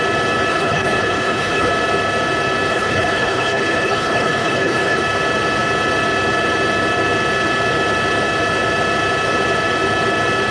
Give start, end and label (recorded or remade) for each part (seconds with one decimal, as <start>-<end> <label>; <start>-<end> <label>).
0.0-0.5 recorded; 0.5-1.7 remade; 1.7-2.7 recorded; 2.7-5.0 remade; 5.0-10.5 recorded